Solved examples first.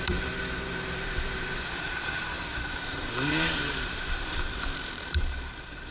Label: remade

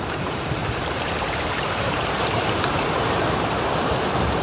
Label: remade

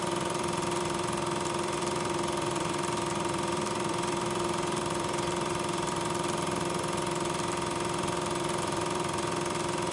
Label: remade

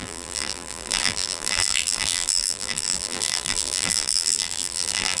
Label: remade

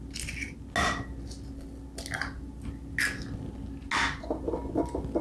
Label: recorded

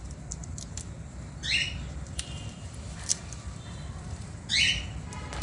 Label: remade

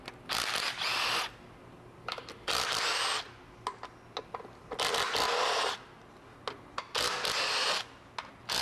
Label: recorded